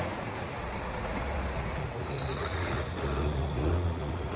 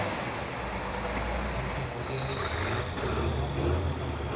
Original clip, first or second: second